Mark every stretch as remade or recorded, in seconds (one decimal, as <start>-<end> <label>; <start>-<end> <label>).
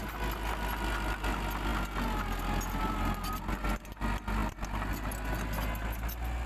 0.0-6.5 recorded